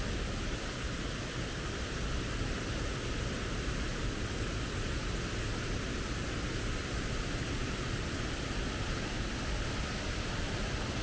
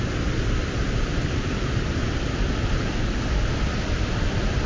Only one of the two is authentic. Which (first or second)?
first